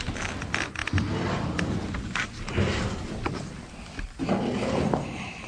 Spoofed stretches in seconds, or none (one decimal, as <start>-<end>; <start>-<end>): none